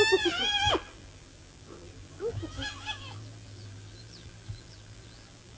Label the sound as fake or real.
fake